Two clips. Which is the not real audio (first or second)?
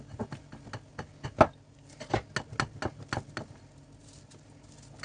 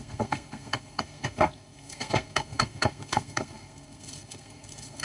second